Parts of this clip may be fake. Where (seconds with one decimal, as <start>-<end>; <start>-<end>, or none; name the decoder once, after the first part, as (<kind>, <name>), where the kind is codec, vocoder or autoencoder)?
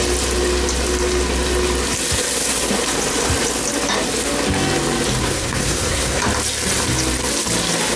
5.2-6.2 (codec, SNAC)